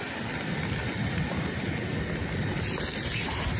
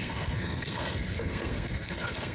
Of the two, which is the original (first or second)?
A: first